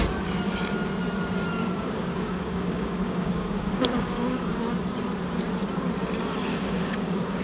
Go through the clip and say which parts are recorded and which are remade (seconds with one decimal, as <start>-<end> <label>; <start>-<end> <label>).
0.0-1.6 recorded; 1.6-4.5 remade; 4.5-6.5 recorded; 6.5-7.4 remade